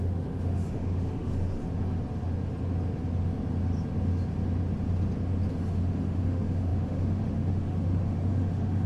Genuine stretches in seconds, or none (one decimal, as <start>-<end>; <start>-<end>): 1.6-5.5